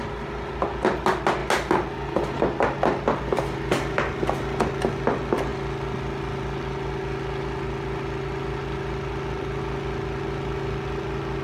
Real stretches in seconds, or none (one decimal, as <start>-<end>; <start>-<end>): 0.0-11.4